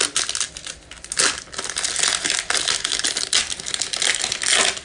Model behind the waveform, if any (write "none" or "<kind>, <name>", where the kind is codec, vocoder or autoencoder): none